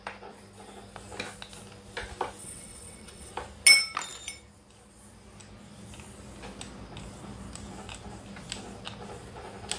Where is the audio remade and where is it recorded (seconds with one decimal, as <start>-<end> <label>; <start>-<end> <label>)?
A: 0.0-2.4 recorded; 2.4-3.3 remade; 3.3-9.8 recorded